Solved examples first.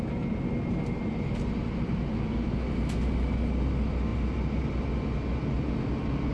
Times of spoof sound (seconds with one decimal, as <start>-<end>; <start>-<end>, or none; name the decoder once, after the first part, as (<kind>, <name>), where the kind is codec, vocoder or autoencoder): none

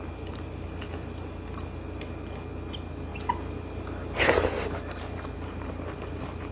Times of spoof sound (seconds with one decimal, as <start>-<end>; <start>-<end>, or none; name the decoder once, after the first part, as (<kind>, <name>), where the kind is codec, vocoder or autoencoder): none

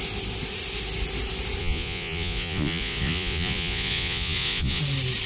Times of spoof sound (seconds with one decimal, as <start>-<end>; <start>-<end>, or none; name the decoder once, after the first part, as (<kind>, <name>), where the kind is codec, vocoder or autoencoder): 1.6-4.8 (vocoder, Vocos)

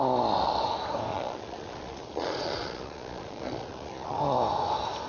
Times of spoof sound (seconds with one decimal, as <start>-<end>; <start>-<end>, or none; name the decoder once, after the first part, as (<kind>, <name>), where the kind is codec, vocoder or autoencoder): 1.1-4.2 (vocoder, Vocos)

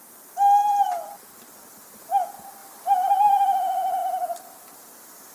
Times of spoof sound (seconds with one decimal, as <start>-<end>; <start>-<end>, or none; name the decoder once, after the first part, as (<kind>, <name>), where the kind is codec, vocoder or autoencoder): 0.6-2.0 (vocoder, BigVGAN v2); 2.6-3.1; 4.0-5.3

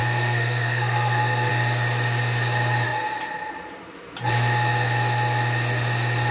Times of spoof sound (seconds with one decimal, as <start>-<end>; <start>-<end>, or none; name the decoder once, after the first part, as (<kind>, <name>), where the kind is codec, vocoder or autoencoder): 0.0-1.5 (codec, SNAC)